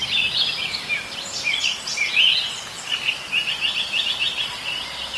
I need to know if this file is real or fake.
real